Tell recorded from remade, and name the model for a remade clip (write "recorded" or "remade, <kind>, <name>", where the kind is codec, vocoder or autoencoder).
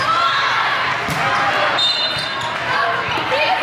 recorded